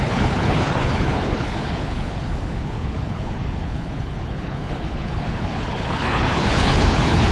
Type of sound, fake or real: fake